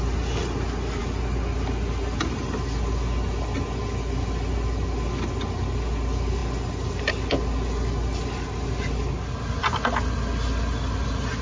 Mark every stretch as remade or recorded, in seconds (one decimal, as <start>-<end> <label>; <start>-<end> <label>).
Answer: 0.0-11.4 recorded